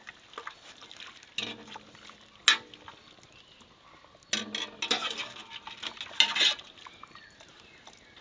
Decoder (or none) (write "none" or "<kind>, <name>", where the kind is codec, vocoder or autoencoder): none